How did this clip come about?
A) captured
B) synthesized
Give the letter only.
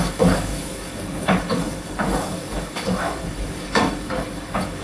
B